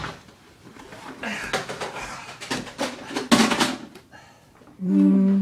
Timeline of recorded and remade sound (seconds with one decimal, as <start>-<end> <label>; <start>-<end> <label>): 0.0-5.4 recorded